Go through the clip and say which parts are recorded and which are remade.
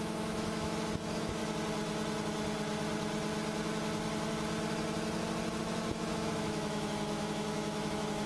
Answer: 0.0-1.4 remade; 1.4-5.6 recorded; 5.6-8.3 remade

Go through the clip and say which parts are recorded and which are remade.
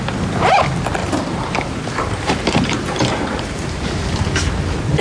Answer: 0.0-1.0 recorded; 1.0-4.0 remade; 4.0-5.0 recorded